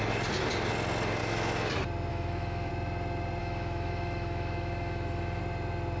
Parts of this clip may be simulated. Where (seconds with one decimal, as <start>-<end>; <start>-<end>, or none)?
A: 1.2-1.7; 2.1-2.7; 3.4-5.4

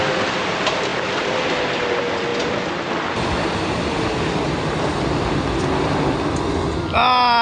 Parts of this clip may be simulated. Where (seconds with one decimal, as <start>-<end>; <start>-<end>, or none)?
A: none

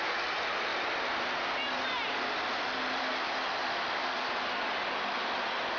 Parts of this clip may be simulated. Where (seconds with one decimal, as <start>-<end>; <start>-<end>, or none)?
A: none

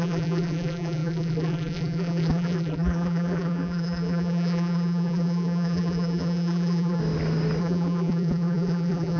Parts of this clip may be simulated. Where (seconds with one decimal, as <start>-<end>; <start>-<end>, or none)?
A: 0.0-7.0; 7.6-9.2

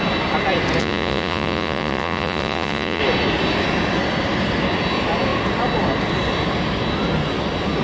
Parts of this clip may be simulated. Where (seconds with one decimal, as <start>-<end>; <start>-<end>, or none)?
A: 0.8-3.0

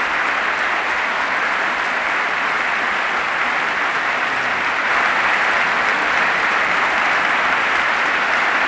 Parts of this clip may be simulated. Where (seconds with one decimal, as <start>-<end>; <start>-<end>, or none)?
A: none